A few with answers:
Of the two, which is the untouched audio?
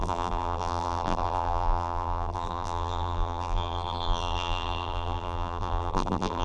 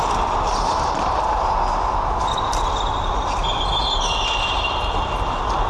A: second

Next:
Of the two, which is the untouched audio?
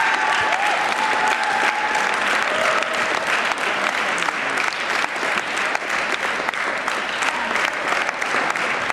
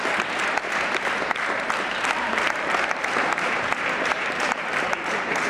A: first